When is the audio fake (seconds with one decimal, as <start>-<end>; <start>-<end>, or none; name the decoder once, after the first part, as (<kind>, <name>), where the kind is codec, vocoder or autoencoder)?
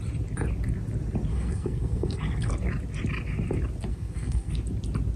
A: 1.3-2.5 (codec, SNAC); 3.9-4.5